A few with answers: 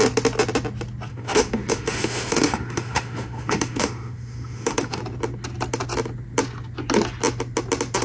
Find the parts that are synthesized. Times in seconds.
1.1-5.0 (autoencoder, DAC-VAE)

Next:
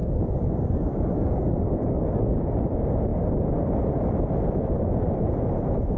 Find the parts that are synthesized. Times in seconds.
0.0-2.4 (codec, DAC)

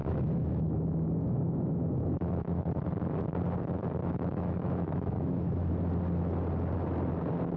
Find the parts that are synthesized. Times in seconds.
0.0-2.6 (autoencoder, DAC-VAE); 4.0-5.7